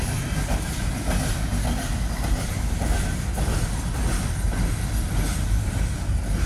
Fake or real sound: real